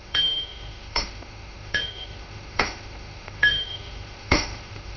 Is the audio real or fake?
fake